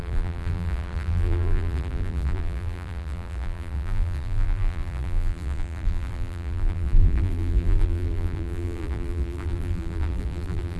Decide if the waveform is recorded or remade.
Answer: remade